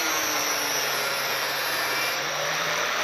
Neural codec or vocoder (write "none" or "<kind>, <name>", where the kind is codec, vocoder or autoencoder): vocoder, BigVGAN v2